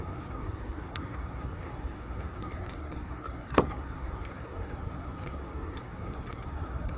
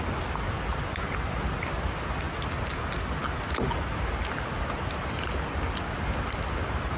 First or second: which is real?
second